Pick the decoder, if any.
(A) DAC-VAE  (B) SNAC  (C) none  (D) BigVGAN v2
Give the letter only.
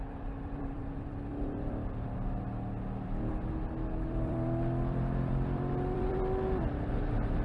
D